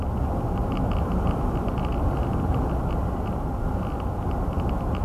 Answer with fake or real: real